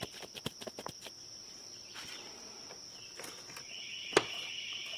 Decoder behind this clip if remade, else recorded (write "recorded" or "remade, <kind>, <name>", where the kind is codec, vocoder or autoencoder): recorded